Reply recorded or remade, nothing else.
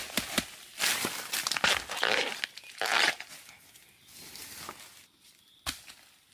recorded